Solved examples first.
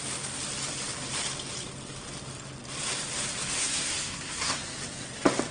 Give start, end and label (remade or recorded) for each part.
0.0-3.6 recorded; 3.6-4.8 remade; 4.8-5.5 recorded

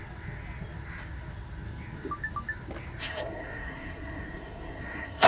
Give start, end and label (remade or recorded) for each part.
0.0-3.0 recorded; 3.0-5.3 remade

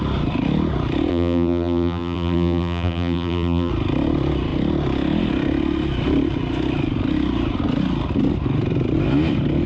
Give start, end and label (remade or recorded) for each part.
0.0-1.1 recorded; 1.1-3.7 remade; 3.7-9.7 recorded

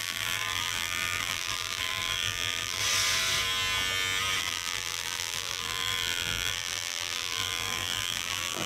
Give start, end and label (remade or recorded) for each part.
0.0-2.8 remade; 2.8-4.4 recorded; 4.4-8.7 remade